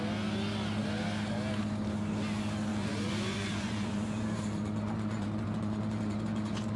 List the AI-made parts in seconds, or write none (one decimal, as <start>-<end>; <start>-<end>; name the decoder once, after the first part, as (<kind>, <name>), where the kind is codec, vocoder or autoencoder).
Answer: 2.7-6.8 (vocoder, Vocos)